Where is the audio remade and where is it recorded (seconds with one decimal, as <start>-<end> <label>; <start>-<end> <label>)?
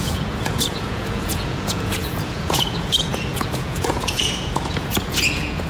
0.0-5.7 remade